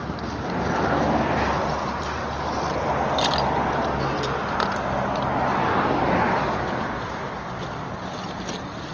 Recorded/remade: recorded